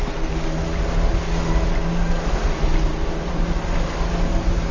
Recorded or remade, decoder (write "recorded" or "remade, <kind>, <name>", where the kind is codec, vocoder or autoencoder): recorded